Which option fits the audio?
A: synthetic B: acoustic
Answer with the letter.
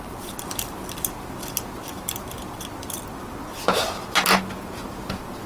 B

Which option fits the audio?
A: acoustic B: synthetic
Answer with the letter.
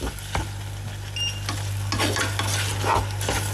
A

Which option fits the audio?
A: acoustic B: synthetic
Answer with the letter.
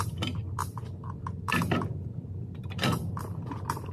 B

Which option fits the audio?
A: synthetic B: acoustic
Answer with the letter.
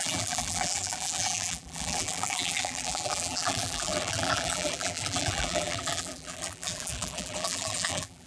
A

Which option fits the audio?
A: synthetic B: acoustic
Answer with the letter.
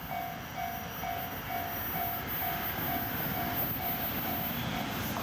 B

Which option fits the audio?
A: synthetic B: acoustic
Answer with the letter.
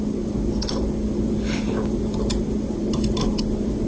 B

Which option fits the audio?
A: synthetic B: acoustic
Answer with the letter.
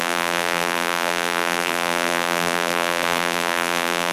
A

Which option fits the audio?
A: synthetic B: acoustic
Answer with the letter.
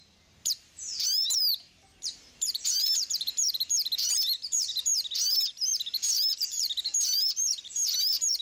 A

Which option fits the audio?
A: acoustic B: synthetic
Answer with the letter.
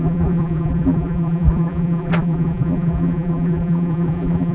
B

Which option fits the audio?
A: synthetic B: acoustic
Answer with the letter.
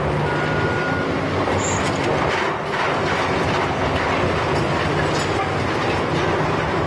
B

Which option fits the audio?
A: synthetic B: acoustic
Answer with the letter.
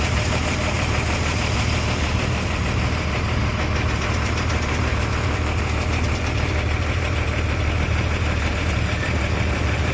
A